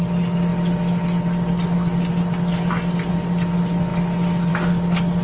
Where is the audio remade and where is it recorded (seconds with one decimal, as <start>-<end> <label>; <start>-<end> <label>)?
0.0-5.2 recorded